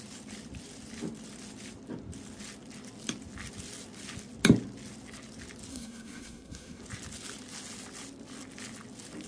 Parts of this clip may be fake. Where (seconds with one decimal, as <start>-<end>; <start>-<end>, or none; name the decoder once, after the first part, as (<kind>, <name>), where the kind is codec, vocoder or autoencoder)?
5.7-6.8 (codec, SNAC)